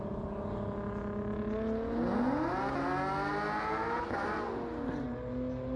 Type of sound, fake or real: real